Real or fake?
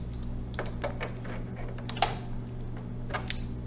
real